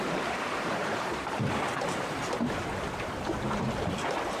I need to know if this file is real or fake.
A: fake